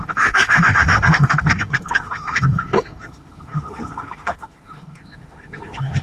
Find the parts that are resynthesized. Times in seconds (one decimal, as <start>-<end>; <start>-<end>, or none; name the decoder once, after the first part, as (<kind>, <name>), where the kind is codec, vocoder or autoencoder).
0.0-6.0 (autoencoder, DAC-VAE)